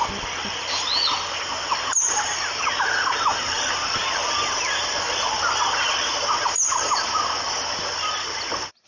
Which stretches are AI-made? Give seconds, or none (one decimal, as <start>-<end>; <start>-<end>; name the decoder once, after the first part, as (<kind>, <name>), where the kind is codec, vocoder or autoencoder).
3.3-6.6 (vocoder, BigVGAN v2)